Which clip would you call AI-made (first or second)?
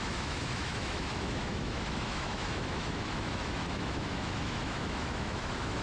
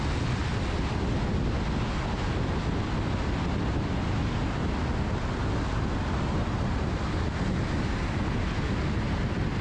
first